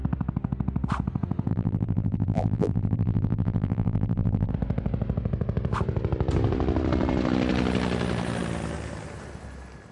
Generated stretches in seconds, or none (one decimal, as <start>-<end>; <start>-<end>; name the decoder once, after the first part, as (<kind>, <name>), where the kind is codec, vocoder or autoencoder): 1.5-4.5 (vocoder, BigVGAN v2)